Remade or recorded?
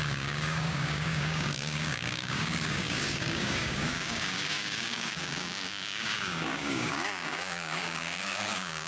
remade